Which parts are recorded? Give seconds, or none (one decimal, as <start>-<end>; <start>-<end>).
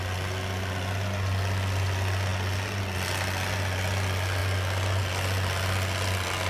0.0-6.5